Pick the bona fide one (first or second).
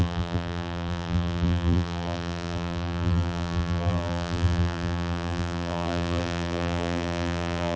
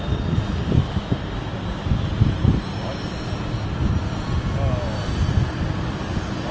second